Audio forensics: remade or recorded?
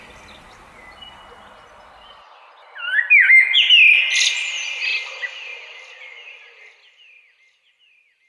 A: recorded